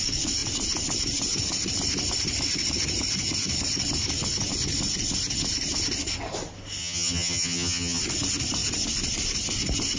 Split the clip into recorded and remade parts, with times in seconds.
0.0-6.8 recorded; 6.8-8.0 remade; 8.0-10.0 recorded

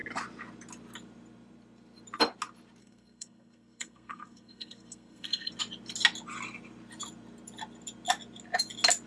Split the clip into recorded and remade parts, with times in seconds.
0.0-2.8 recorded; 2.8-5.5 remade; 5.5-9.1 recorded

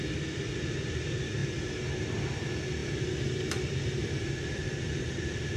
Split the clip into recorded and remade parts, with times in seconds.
0.0-4.0 recorded; 4.0-5.6 remade